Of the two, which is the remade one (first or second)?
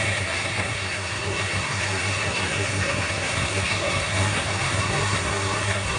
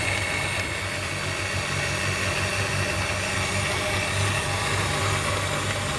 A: first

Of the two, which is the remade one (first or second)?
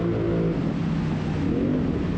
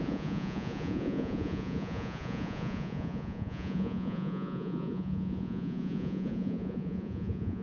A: second